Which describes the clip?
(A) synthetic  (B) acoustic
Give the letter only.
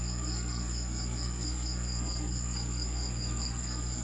A